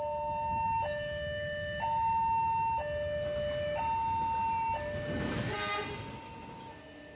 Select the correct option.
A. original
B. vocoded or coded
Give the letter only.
A